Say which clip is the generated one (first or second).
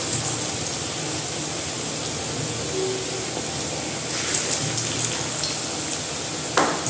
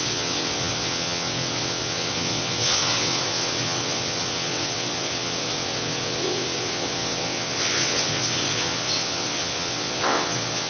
second